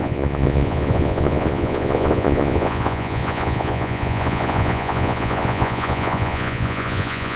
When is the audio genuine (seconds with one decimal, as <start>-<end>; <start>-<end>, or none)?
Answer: none